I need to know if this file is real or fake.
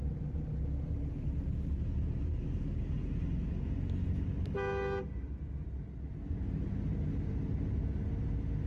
real